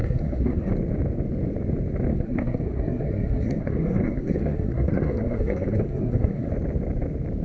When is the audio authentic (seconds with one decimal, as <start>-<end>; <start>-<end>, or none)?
0.7-2.1; 6.5-7.4